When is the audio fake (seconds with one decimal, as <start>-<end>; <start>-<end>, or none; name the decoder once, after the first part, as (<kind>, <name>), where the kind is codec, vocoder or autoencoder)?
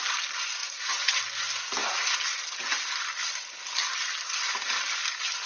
0.6-1.2 (vocoder, BigVGAN v2)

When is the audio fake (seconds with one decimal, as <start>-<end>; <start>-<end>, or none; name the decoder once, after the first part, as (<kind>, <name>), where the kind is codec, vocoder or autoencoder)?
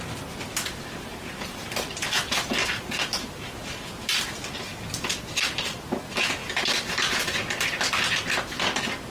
2.6-3.1 (vocoder, BigVGAN v2); 6.4-7.8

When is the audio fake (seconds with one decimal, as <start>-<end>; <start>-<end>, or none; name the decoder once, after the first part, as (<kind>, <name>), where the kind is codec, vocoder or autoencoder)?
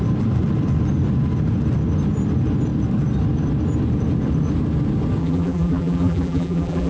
5.2-6.9 (vocoder, BigVGAN v2)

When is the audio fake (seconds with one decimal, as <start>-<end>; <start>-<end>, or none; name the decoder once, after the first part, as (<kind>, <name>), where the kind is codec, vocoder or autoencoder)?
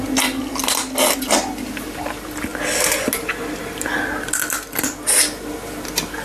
none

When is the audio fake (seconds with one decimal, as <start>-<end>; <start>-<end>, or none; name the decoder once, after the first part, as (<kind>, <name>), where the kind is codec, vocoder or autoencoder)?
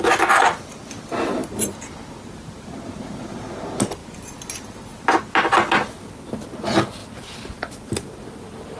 none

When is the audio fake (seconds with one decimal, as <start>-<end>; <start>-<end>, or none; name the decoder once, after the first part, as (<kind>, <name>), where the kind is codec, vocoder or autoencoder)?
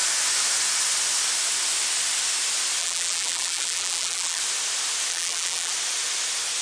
2.8-4.4 (vocoder, BigVGAN v2); 5.1-5.7